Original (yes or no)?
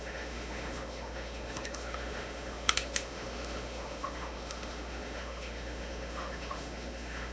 no